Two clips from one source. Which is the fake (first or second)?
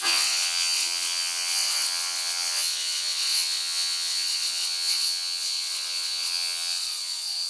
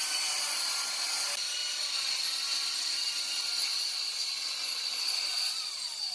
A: first